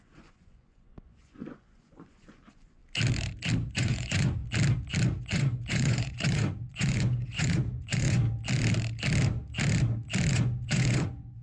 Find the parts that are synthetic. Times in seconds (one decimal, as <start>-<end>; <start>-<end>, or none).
0.0-2.8; 3.7-4.4; 5.2-8.2; 10.3-11.4